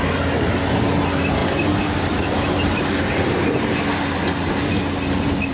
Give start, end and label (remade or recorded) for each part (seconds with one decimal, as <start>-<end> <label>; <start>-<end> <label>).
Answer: 0.0-5.5 recorded